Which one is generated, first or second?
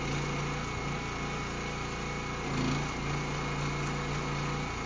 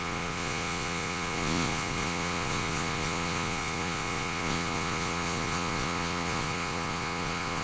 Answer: second